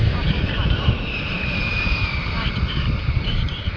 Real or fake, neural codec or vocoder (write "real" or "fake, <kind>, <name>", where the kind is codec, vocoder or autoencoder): fake, vocoder, BigVGAN v2